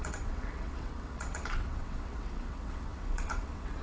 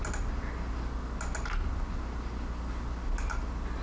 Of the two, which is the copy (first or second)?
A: first